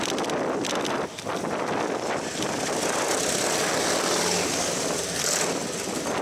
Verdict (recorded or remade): recorded